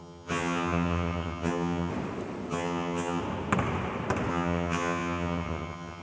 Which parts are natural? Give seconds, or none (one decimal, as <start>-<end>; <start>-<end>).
1.9-2.5; 3.2-4.3